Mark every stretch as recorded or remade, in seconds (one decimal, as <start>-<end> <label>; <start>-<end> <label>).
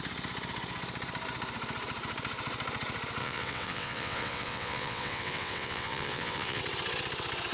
0.0-3.2 recorded; 3.2-6.6 remade; 6.6-7.5 recorded